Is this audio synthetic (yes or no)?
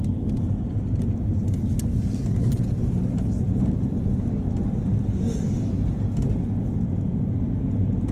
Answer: no